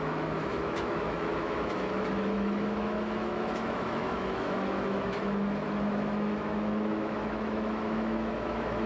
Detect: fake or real fake